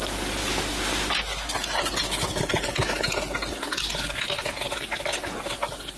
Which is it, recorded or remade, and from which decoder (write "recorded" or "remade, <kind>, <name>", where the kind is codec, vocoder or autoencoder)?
recorded